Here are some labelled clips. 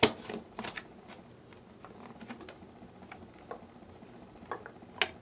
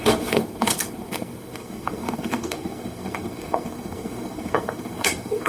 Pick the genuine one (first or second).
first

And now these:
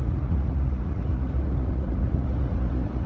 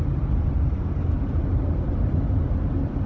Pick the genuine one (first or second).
second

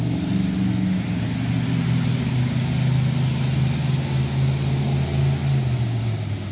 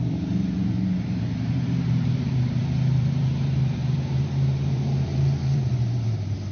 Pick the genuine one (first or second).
first